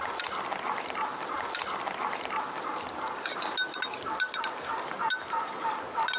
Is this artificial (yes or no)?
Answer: no